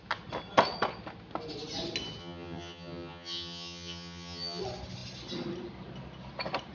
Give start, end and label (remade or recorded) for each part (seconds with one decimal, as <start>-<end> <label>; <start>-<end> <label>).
0.0-2.2 recorded; 2.2-4.6 remade; 4.6-6.7 recorded